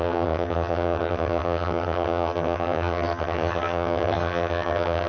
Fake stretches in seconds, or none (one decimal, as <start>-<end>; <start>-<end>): 0.0-5.1